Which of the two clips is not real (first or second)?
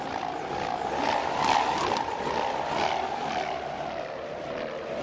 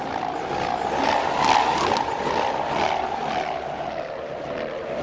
first